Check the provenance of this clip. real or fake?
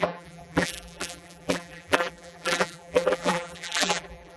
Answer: fake